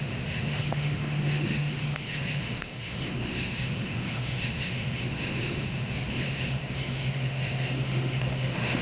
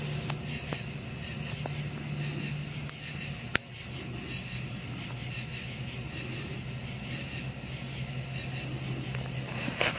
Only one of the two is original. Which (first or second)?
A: second